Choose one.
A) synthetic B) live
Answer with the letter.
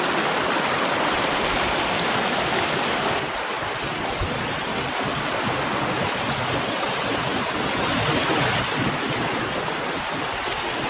B